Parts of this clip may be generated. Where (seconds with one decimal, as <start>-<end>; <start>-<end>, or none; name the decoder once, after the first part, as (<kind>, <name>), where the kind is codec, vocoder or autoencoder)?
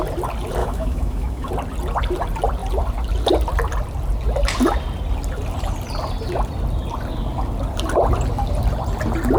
0.6-1.5 (autoencoder, DAC-VAE)